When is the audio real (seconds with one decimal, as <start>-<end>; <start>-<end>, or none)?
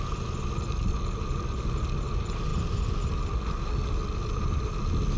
0.0-5.2